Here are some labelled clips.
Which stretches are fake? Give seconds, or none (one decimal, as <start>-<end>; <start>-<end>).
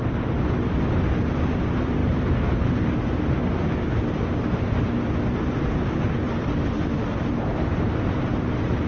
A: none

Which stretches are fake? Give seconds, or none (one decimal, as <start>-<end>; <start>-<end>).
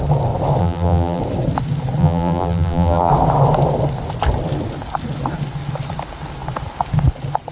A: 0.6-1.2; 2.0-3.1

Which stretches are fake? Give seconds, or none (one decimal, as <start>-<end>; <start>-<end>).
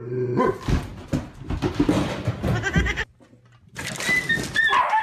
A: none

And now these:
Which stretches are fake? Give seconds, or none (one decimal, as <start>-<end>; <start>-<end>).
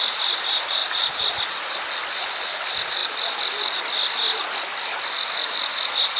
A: 3.0-3.8